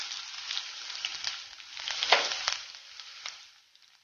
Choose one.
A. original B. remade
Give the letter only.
A